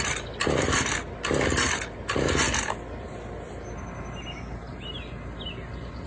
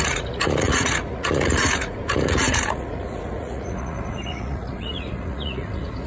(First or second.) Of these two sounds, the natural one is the first